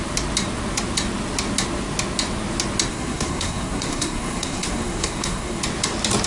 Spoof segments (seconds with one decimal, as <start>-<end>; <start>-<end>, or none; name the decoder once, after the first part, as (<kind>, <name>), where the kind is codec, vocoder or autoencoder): 2.9-5.6 (codec, SNAC)